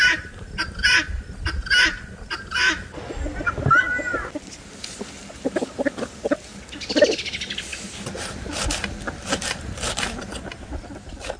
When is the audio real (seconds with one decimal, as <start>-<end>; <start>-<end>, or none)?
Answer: 0.0-1.9; 4.7-5.6; 6.5-11.4